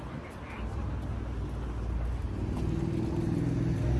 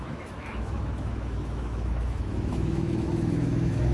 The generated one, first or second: second